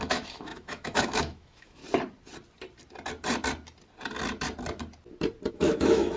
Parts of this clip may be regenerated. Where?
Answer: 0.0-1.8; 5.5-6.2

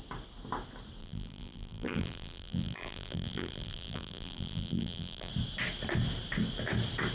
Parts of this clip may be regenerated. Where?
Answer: 1.0-5.3

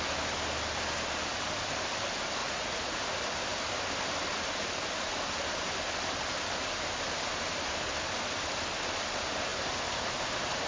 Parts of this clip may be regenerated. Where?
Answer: 2.4-3.0

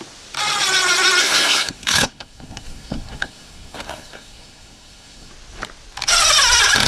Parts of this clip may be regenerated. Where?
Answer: 1.2-5.3

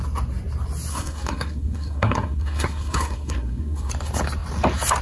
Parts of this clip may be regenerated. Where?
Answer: 0.9-3.9

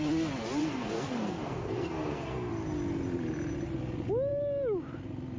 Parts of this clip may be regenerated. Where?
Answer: 0.6-2.5

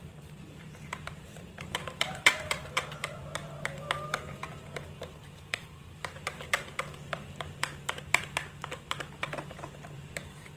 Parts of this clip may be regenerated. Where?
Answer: 0.0-10.6

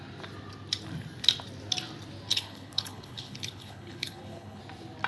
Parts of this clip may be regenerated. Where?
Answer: 2.3-4.6